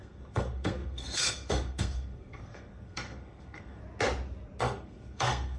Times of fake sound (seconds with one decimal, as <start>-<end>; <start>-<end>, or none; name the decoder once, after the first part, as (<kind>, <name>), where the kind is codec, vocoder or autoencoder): 0.0-3.8 (codec, SNAC); 4.6-5.6